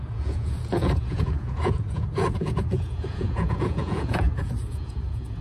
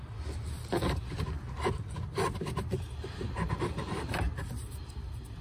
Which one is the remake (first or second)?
first